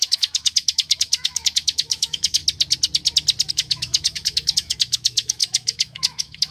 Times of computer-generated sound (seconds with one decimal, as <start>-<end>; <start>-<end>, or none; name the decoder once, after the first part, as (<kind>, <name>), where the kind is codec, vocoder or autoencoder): 0.0-2.4 (autoencoder, DAC-VAE); 3.5-6.5